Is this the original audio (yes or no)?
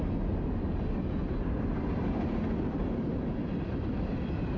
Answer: yes